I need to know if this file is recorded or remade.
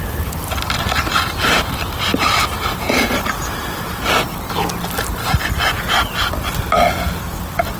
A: recorded